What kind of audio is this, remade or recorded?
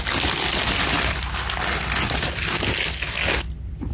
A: recorded